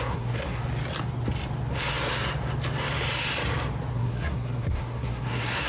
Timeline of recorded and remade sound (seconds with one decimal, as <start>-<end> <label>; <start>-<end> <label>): 0.0-0.6 remade; 0.6-3.9 recorded; 3.9-5.7 remade